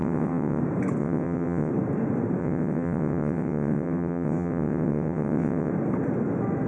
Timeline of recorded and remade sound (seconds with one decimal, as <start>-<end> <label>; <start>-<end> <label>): 0.0-0.6 remade; 0.6-1.0 recorded; 1.0-1.7 remade; 1.7-2.4 recorded; 2.4-5.7 remade; 5.7-6.7 recorded